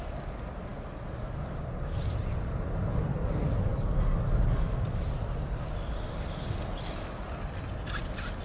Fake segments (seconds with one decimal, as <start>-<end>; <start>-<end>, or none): none